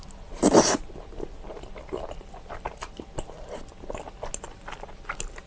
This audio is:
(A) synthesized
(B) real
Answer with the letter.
B